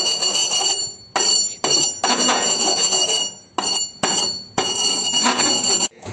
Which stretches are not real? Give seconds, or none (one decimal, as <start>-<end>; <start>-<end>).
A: 0.0-0.4; 2.1-3.0; 3.9-6.1